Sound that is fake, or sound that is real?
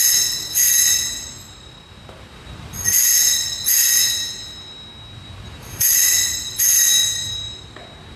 real